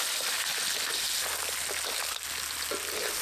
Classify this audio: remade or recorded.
recorded